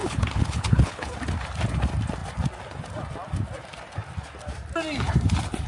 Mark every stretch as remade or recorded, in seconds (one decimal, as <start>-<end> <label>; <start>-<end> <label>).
0.0-1.1 remade; 1.1-5.7 recorded